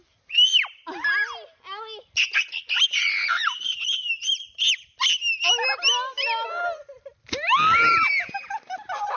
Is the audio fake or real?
real